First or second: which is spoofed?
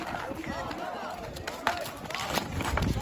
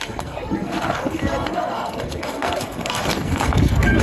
second